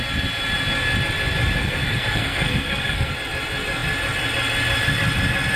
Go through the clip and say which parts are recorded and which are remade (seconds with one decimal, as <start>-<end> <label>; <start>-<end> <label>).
0.0-1.6 recorded; 1.6-3.1 remade; 3.1-5.6 recorded